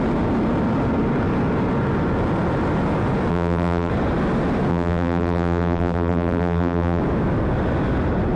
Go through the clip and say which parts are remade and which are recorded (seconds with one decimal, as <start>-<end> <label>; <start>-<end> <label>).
0.0-3.3 recorded; 3.3-3.9 remade; 3.9-4.7 recorded; 4.7-7.0 remade; 7.0-8.4 recorded